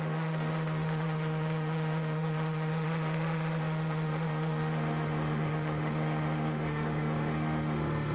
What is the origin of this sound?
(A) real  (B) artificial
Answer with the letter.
B